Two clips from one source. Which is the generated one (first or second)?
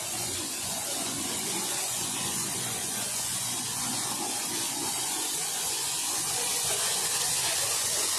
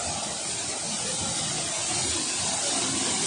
first